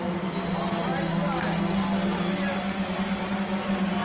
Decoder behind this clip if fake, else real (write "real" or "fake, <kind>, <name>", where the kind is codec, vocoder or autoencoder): real